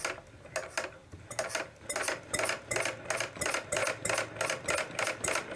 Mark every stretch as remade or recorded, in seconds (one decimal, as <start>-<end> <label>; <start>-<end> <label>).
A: 0.0-5.6 recorded